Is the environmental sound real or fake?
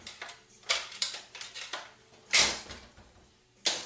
real